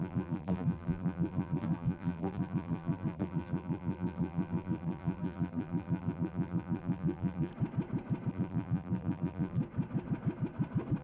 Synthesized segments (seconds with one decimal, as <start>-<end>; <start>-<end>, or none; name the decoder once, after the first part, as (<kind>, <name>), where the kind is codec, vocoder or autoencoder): 0.0-7.5 (vocoder, BigVGAN v2); 8.3-9.6